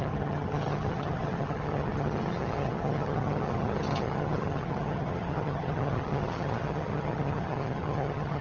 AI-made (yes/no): yes